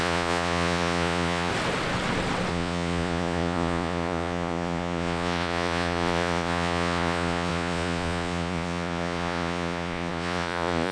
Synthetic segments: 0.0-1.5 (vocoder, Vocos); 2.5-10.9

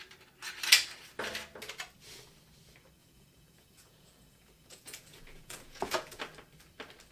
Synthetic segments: 3.0-6.2 (vocoder, Vocos)

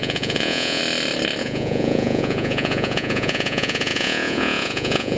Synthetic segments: 0.0-0.8 (vocoder, Vocos); 1.4-5.2